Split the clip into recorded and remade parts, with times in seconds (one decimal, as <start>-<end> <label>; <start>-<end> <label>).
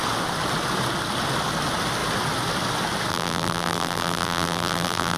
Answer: 0.0-3.1 recorded; 3.1-5.2 remade